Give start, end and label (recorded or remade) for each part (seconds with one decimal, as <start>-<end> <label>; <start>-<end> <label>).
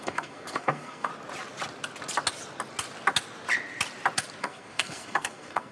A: 0.0-1.1 remade; 1.1-4.4 recorded; 4.4-5.7 remade